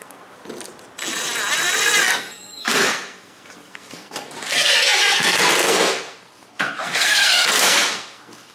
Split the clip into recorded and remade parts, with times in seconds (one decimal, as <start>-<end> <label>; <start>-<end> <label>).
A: 0.0-0.4 remade; 0.4-2.0 recorded; 2.0-8.5 remade